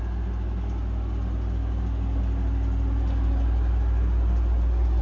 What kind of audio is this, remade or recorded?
recorded